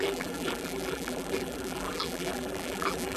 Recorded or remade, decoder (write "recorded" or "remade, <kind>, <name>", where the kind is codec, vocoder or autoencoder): remade, vocoder, BigVGAN v2